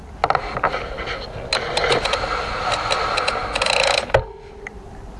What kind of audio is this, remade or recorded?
recorded